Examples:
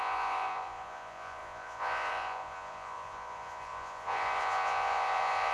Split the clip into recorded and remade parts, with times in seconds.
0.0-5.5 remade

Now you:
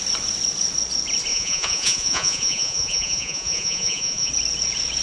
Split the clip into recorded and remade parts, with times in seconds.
0.0-1.3 recorded; 1.3-4.3 remade; 4.3-5.0 recorded

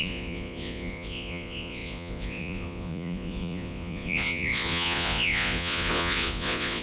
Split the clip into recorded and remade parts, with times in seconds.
0.0-6.8 remade

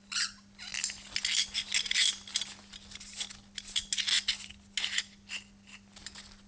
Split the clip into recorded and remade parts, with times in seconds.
0.0-6.5 recorded